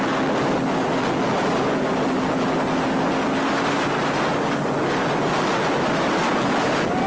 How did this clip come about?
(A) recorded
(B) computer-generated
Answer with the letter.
A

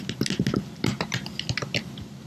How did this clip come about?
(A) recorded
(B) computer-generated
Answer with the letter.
A